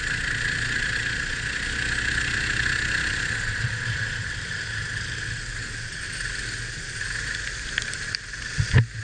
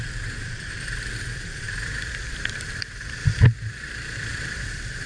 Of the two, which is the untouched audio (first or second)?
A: first